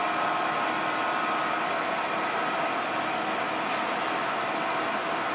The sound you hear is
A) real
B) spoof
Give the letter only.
A